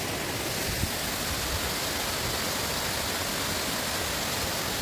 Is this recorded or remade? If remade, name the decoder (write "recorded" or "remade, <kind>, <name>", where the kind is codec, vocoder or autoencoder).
recorded